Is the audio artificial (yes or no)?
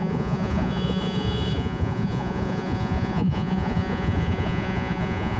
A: yes